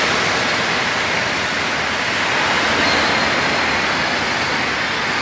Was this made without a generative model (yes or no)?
yes